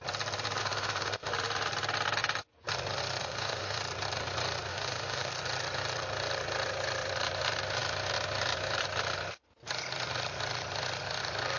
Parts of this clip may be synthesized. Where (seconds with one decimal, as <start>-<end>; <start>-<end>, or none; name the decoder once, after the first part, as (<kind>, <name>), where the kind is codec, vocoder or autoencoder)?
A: 0.6-1.3 (autoencoder, DAC-VAE); 3.2-3.8; 4.7-5.3